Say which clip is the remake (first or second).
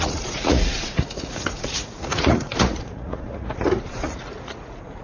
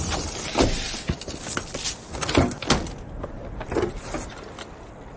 first